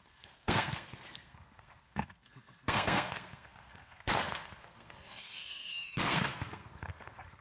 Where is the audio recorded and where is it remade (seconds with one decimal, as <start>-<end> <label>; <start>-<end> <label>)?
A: 0.0-7.4 remade